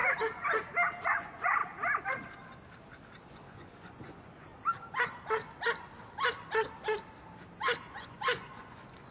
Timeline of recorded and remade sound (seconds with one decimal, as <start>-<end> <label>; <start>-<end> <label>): 0.0-1.0 recorded; 1.0-1.6 remade; 1.6-3.3 recorded; 3.3-4.5 remade; 4.5-7.9 recorded; 7.9-9.1 remade